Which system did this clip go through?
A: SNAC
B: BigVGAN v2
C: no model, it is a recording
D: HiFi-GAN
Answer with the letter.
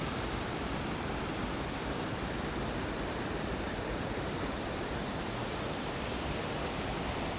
B